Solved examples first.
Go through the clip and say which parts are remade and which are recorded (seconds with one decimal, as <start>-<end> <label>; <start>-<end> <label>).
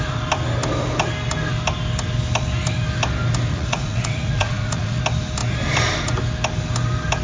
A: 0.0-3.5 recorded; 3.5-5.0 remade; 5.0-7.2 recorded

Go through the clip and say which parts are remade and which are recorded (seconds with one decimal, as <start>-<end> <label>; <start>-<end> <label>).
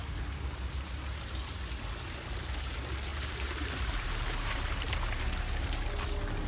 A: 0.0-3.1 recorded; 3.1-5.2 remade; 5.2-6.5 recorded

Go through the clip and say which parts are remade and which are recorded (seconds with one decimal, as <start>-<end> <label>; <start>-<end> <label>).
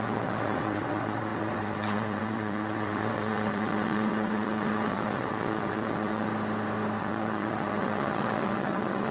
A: 0.0-6.3 remade; 6.3-7.0 recorded; 7.0-9.1 remade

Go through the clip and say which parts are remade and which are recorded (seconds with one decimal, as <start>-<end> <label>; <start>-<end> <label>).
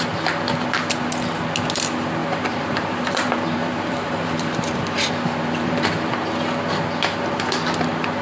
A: 0.0-2.2 recorded; 2.2-6.1 remade; 6.1-8.2 recorded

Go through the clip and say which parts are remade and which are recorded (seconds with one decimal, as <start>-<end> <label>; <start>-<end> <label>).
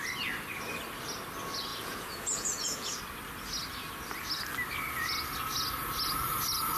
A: 0.0-1.7 recorded; 1.7-3.0 remade; 3.0-6.8 recorded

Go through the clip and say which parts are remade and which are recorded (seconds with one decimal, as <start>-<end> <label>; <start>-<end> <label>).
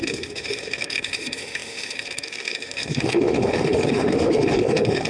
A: 0.0-5.1 remade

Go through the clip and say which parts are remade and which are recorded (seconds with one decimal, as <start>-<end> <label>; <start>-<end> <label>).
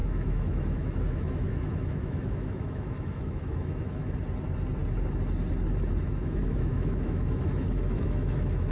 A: 0.0-4.0 remade; 4.0-6.0 recorded; 6.0-8.7 remade